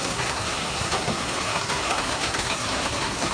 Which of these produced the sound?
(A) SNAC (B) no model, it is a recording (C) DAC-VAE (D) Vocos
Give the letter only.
A